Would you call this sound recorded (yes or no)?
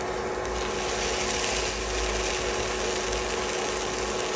yes